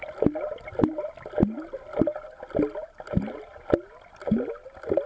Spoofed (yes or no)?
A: no